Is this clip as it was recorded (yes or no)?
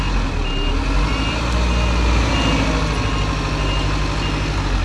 yes